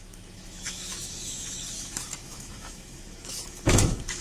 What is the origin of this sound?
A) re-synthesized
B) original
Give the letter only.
A